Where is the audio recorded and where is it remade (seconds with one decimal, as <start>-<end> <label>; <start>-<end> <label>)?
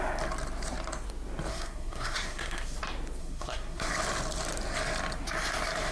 0.0-1.5 recorded; 1.5-2.8 remade; 2.8-3.2 recorded; 3.2-3.9 remade; 3.9-5.9 recorded